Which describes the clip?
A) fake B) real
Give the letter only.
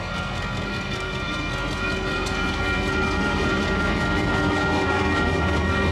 A